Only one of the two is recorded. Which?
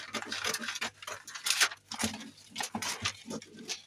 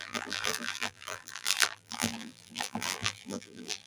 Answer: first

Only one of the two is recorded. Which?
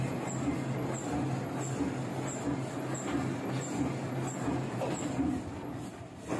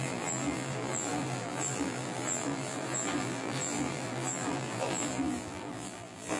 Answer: first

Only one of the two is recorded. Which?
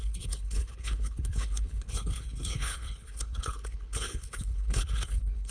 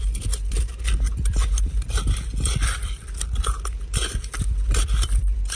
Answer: second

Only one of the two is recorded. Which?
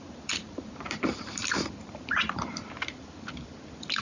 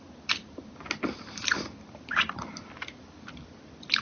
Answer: second